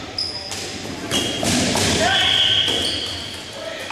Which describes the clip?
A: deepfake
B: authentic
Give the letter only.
B